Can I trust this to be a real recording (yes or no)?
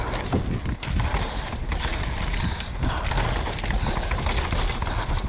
yes